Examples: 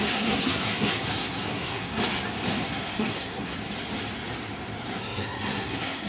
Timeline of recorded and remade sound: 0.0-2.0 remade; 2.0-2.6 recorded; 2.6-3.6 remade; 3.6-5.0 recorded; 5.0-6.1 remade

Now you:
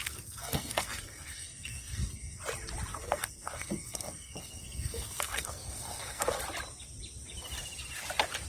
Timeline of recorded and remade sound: 0.0-2.4 remade; 2.4-2.9 recorded; 2.9-6.4 remade; 6.4-8.5 recorded

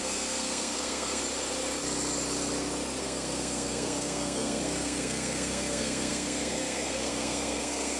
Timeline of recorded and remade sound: 0.0-1.2 remade; 1.2-3.0 recorded; 3.0-8.0 remade